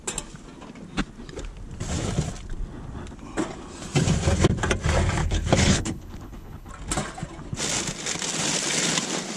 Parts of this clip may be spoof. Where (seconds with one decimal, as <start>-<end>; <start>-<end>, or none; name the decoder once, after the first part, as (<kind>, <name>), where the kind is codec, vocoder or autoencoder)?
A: 5.2-6.7 (codec, HILCodec)